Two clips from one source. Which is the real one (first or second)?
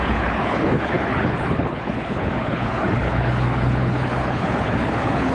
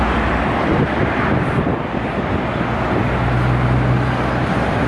second